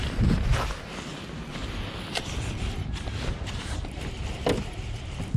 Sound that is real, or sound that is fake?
real